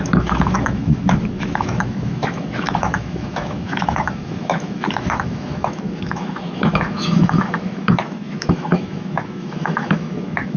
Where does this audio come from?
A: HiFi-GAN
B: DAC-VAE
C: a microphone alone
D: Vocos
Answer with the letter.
B